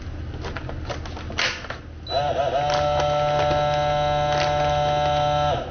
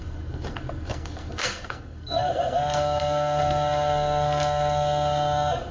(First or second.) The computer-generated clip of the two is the second